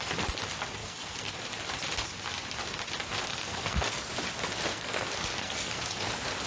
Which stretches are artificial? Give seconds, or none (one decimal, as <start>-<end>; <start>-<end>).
0.8-1.4; 3.3-4.1; 4.7-6.1